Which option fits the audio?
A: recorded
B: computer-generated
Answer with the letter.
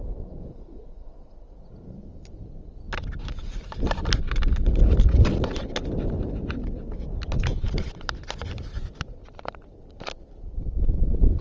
B